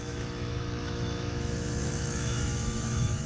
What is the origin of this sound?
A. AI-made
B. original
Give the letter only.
A